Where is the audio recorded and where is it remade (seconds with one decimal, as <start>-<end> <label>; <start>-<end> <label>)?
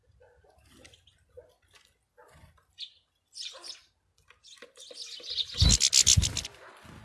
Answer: 0.0-7.0 recorded